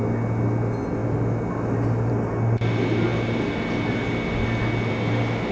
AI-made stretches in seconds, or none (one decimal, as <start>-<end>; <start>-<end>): none

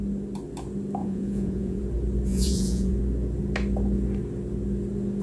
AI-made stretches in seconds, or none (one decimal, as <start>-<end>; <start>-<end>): 1.0-1.8; 2.3-3.0

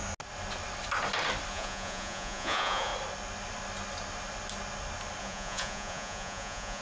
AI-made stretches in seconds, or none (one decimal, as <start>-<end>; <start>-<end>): 1.5-2.9; 5.2-6.8

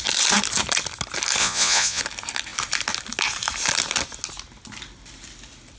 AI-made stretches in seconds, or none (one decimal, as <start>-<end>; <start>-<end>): 1.4-2.0

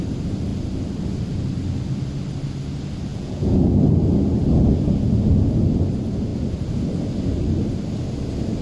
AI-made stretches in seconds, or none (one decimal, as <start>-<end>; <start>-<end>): 3.1-3.7

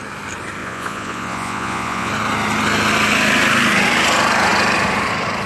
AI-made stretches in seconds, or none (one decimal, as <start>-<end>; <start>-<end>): 0.6-2.1

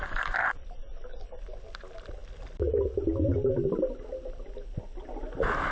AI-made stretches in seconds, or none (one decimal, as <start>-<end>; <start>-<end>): none